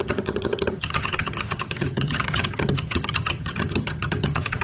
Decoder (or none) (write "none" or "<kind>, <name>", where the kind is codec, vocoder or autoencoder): vocoder, HiFi-GAN